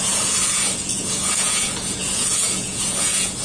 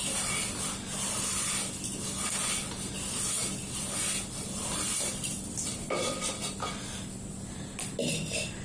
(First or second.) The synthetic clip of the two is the first